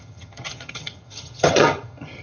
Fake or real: fake